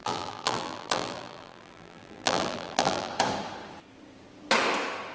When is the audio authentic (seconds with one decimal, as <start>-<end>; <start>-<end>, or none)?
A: 3.1-5.1